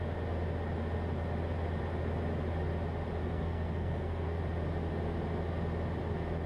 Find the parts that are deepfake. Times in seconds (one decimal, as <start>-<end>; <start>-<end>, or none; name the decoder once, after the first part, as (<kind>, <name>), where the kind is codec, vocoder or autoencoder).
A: 3.2-4.4 (codec, SNAC)